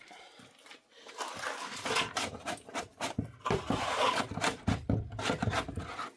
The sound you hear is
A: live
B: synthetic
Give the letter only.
A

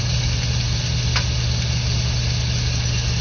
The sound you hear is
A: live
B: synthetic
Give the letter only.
A